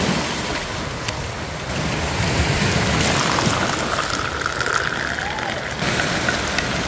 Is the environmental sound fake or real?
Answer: real